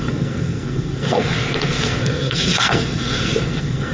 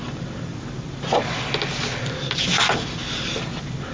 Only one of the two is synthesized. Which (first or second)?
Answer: first